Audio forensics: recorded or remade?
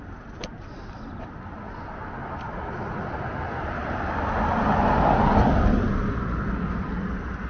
recorded